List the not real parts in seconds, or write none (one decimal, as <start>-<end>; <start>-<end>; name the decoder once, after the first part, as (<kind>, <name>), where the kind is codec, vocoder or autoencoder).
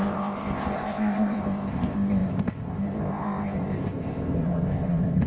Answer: 0.0-5.3 (codec, ZipCodec)